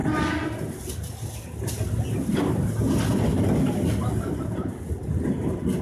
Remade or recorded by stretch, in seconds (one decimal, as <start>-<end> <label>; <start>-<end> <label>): 0.0-5.8 recorded